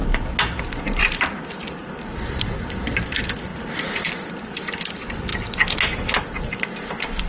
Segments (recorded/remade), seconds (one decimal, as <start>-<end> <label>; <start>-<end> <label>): 0.0-3.5 remade; 3.5-4.3 recorded; 4.3-5.3 remade; 5.3-6.4 recorded; 6.4-7.3 remade